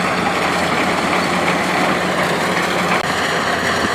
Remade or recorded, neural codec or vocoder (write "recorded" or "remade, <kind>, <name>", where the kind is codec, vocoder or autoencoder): recorded